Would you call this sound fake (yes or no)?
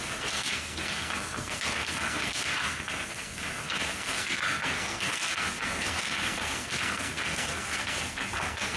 yes